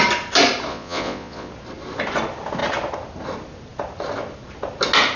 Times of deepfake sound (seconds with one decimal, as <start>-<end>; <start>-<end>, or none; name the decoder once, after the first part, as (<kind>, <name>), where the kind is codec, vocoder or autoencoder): 0.7-1.5 (vocoder, Vocos)